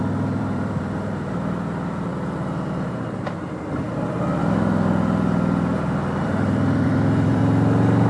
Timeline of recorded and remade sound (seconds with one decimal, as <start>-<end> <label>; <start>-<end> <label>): 0.0-2.1 remade; 2.1-3.6 recorded; 3.6-4.4 remade; 4.4-6.2 recorded; 6.2-7.4 remade; 7.4-8.1 recorded

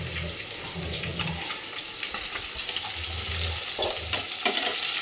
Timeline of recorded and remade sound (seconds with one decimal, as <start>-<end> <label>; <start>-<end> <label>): 0.0-5.0 recorded

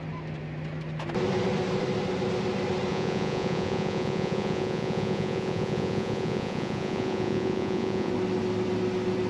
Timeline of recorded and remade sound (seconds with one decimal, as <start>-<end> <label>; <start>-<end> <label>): 0.0-2.9 recorded; 2.9-8.1 remade; 8.1-9.3 recorded

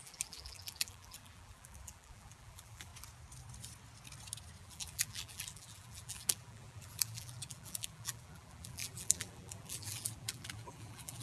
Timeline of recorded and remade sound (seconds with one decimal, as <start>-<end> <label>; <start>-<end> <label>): 0.0-2.9 remade; 2.9-4.6 recorded; 4.6-11.2 remade

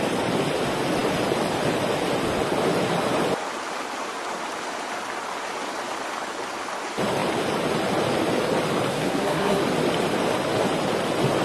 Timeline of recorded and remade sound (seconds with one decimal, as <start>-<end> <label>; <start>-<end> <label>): 0.0-8.9 recorded; 8.9-9.6 remade; 9.6-11.4 recorded

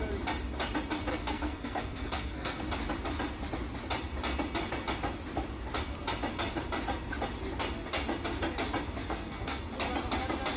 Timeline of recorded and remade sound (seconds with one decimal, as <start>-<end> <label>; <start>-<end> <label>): 0.0-1.1 recorded; 1.1-2.6 remade; 2.6-9.0 recorded; 9.0-9.6 remade; 9.6-10.6 recorded

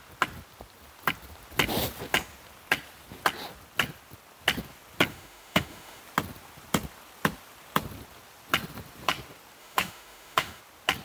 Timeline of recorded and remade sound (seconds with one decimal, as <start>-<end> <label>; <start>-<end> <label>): 0.0-5.1 recorded; 5.1-6.0 remade; 6.0-9.6 recorded; 9.6-10.6 remade; 10.6-11.0 recorded

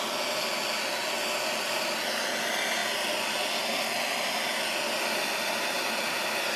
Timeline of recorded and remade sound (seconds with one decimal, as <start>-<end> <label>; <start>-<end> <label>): 0.0-6.6 recorded